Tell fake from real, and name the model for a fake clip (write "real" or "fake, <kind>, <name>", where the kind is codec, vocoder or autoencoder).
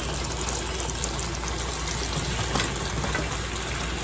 real